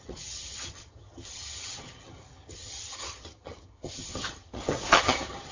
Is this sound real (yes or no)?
no